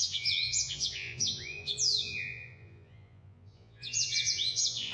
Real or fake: fake